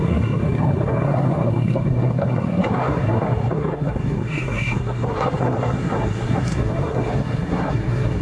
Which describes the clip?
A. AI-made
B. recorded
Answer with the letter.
A